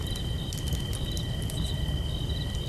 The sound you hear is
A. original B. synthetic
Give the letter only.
A